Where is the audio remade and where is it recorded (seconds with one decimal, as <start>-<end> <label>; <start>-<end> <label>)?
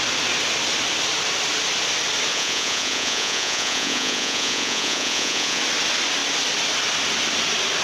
0.0-2.3 recorded; 2.3-5.6 remade; 5.6-7.8 recorded